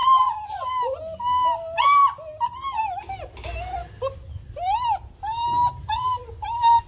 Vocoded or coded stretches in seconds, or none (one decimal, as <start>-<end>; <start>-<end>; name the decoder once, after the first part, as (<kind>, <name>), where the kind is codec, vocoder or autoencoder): none